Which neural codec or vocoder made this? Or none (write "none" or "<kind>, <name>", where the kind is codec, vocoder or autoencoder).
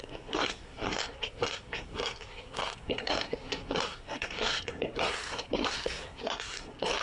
codec, SNAC